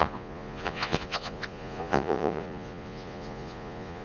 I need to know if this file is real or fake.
fake